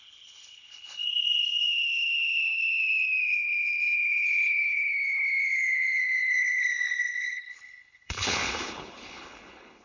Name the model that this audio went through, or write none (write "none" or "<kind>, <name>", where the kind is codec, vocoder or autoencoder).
codec, HILCodec